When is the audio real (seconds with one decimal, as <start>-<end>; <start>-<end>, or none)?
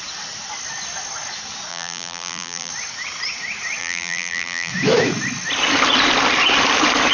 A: 0.0-1.7; 2.7-3.8; 4.7-7.1